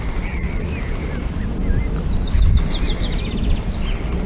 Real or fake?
real